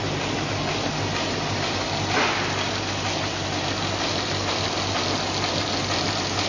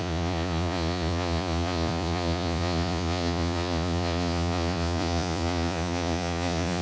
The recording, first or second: first